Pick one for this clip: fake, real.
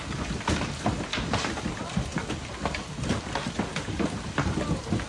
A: real